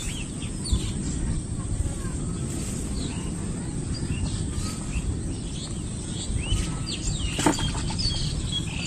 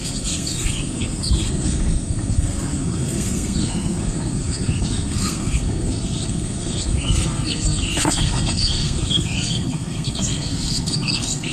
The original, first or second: first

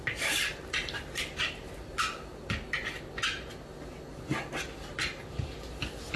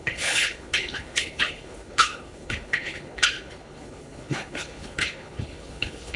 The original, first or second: first